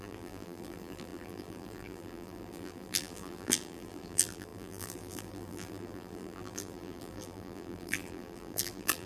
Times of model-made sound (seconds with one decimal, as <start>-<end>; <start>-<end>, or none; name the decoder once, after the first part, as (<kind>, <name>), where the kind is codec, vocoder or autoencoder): 0.0-9.1 (vocoder, BigVGAN v2)